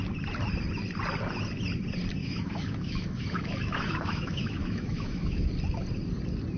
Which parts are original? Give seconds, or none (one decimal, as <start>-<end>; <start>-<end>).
0.0-2.2; 5.5-6.6